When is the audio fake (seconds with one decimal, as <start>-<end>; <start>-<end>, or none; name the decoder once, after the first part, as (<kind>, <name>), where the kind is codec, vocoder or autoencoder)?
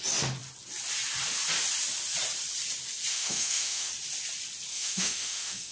3.1-3.9 (autoencoder, DAC-VAE); 4.7-5.7